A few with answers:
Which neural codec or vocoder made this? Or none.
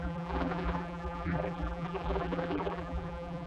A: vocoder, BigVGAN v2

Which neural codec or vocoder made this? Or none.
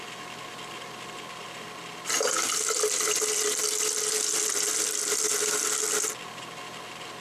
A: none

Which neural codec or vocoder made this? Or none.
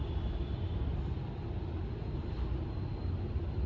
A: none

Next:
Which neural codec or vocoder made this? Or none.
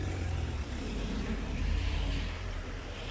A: vocoder, BigVGAN v2